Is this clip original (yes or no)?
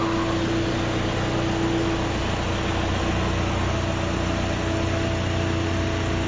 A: yes